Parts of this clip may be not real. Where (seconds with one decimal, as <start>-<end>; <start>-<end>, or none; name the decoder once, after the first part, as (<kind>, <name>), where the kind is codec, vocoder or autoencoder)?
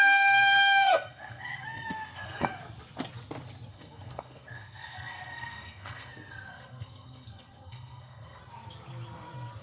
0.0-2.5 (codec, SNAC); 3.7-8.4